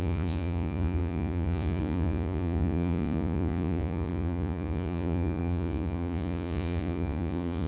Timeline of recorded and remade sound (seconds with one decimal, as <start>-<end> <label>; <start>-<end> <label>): 0.0-7.7 remade